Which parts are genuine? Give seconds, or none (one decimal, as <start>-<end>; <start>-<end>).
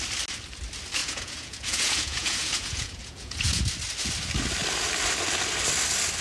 0.0-1.0; 3.6-6.2